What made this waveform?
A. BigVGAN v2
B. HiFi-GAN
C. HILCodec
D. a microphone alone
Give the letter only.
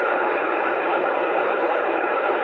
C